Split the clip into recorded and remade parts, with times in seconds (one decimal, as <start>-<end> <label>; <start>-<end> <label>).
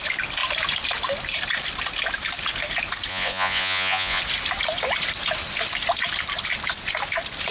0.0-3.1 recorded; 3.1-4.2 remade; 4.2-7.5 recorded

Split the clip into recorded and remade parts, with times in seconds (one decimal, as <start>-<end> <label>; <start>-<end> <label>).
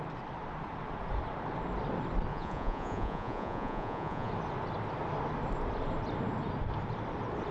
0.0-2.3 recorded; 2.3-4.3 remade; 4.3-7.5 recorded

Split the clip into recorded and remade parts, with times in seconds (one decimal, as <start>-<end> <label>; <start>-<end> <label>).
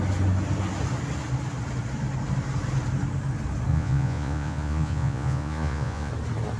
0.0-3.7 recorded; 3.7-6.1 remade; 6.1-6.6 recorded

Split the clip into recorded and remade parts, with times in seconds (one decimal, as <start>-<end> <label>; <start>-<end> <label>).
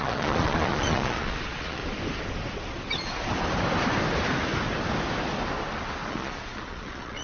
0.0-1.8 remade; 1.8-6.1 recorded; 6.1-7.2 remade